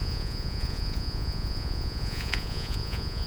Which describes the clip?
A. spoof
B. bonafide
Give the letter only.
A